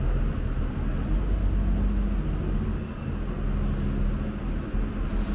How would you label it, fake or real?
real